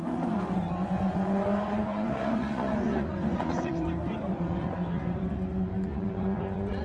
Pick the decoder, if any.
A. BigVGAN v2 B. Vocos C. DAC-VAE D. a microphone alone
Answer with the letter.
B